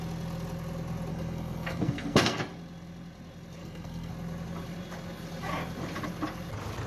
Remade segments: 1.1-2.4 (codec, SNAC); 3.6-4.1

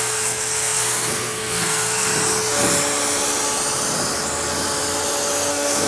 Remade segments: 0.0-2.1 (codec, SNAC); 5.5-5.9

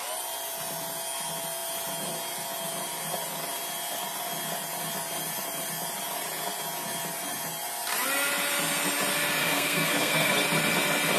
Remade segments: 9.4-10.3 (codec, SNAC)

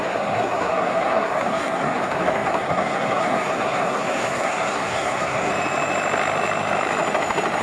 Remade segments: 0.0-5.5 (codec, SNAC)

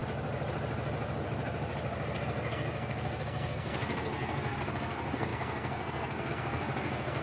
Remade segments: 2.2-7.2 (codec, SNAC)

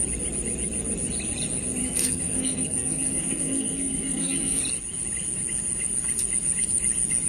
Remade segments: 1.8-4.6 (codec, SNAC)

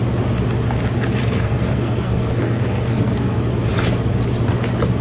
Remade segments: 1.2-3.4 (codec, SNAC)

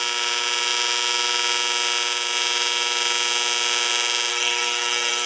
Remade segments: 4.3-5.3 (codec, SNAC)